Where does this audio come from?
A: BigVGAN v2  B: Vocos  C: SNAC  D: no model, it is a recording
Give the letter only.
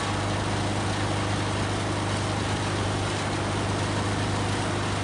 D